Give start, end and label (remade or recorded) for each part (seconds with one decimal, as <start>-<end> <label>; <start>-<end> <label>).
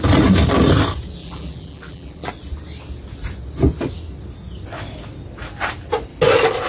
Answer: 0.0-1.2 recorded; 1.2-2.3 remade; 2.3-6.7 recorded